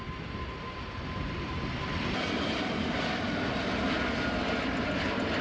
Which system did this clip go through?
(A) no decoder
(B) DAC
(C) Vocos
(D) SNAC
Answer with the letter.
A